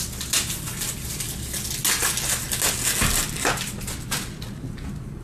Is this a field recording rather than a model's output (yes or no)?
yes